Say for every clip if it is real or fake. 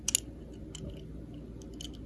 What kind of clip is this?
real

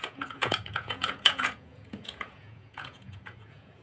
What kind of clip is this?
fake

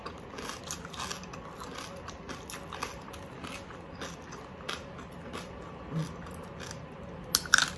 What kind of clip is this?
real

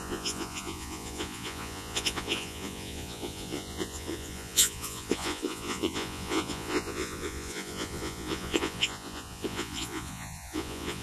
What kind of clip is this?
fake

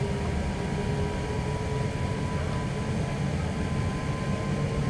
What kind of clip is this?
real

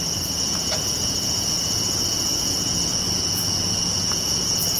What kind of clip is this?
fake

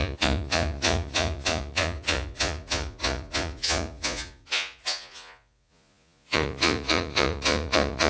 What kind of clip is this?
fake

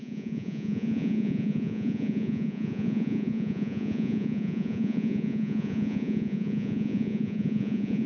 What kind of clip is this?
fake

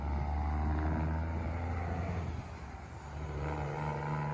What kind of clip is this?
real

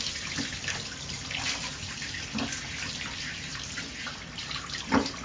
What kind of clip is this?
real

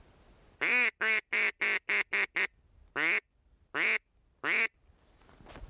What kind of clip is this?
real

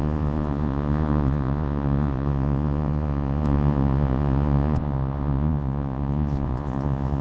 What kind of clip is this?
fake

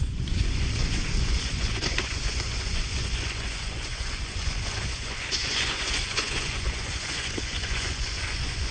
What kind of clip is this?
fake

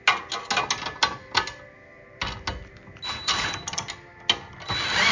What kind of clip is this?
real